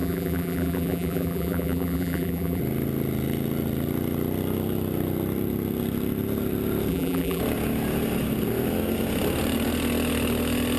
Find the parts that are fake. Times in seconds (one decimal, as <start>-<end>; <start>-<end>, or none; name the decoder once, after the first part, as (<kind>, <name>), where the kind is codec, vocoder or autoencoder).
0.0-2.6 (vocoder, BigVGAN v2); 6.9-7.4